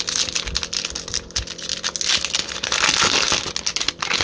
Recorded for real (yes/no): yes